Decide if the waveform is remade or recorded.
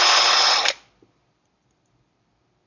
remade